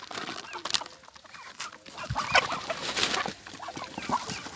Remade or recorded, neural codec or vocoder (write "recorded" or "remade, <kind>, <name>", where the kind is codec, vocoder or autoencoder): recorded